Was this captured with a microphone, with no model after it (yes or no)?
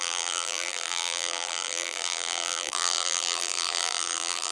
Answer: no